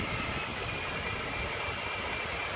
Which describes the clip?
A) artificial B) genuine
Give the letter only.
B